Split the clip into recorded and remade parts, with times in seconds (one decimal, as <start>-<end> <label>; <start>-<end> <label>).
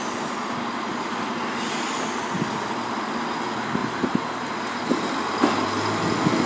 0.0-3.8 recorded; 3.8-4.5 remade; 4.5-6.5 recorded